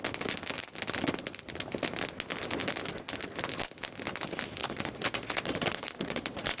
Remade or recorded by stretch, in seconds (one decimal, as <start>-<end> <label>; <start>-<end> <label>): 0.0-4.6 recorded; 4.6-6.6 remade